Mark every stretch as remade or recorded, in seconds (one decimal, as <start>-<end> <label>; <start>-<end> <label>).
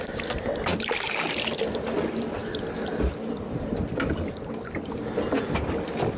0.0-6.2 recorded